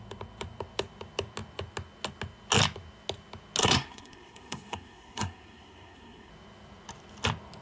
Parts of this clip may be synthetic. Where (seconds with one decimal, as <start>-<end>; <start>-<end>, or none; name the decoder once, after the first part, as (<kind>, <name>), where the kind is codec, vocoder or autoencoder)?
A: 3.6-6.3 (codec, SNAC)